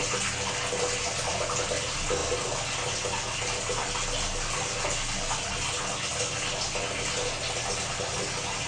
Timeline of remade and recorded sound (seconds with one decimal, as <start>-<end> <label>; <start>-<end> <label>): 0.0-8.7 recorded